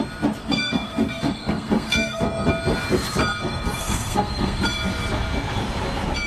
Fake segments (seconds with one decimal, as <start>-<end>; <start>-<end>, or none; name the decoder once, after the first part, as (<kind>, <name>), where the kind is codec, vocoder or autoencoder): 0.4-2.5 (codec, SNAC); 3.4-4.6